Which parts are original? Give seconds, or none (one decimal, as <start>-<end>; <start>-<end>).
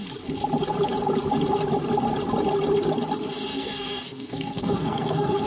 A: 0.0-3.5